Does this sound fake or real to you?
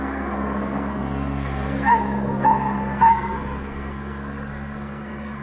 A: fake